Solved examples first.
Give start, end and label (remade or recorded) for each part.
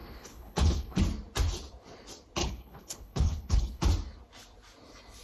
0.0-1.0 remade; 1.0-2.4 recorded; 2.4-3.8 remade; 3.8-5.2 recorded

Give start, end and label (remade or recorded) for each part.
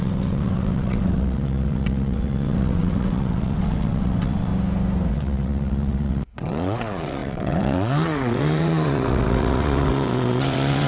0.0-4.5 remade; 4.5-5.1 recorded; 5.1-10.9 remade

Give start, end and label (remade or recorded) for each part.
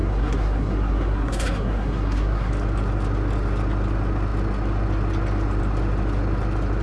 0.0-2.5 remade; 2.5-6.8 recorded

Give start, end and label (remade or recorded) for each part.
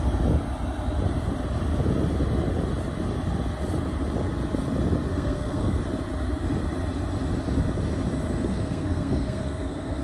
0.0-5.1 recorded; 5.1-5.8 remade; 5.8-8.4 recorded; 8.4-10.0 remade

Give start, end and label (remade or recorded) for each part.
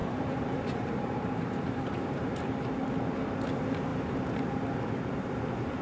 0.0-2.5 remade; 2.5-3.9 recorded; 3.9-4.9 remade; 4.9-5.8 recorded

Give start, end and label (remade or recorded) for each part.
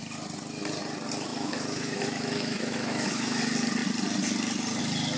0.0-1.3 recorded; 1.3-3.4 remade; 3.4-5.2 recorded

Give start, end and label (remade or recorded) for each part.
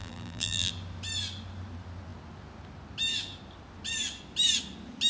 0.0-0.7 remade; 0.7-5.1 recorded